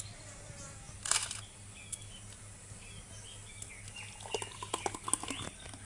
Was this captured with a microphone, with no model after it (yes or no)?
yes